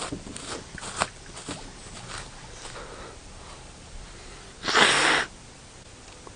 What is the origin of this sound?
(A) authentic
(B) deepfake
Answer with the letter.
A